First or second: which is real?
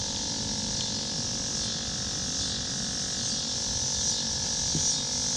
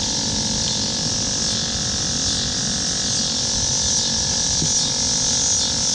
first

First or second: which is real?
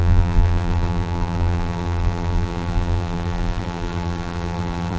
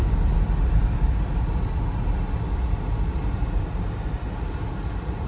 second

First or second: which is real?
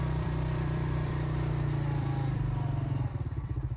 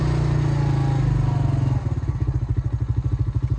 second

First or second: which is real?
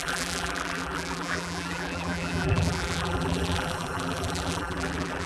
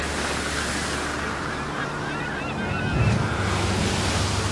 second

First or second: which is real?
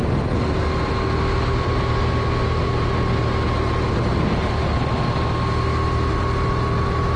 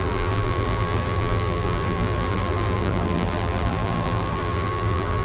first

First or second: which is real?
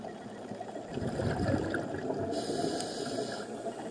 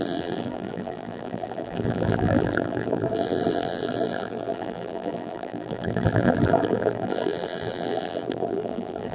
first